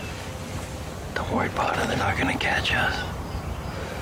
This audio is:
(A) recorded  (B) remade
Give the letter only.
B